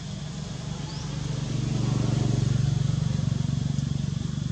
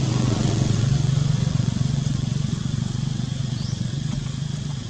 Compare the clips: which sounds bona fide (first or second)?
first